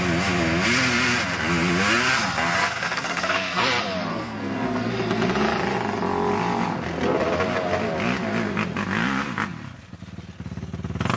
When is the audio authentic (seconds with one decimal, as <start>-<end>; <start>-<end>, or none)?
0.0-2.6; 3.6-4.1; 4.9-11.2